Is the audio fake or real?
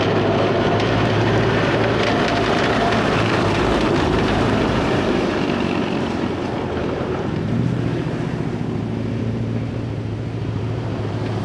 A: fake